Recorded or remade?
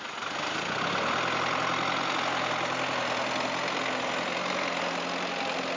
recorded